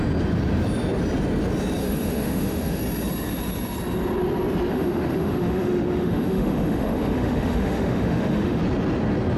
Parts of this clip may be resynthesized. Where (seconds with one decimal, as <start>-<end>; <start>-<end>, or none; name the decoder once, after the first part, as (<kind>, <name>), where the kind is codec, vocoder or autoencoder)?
1.8-2.8 (autoencoder, DAC-VAE); 4.7-8.6